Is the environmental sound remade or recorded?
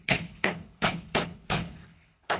remade